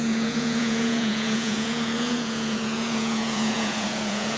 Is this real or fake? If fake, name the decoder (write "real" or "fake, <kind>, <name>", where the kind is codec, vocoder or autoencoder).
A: fake, vocoder, Vocos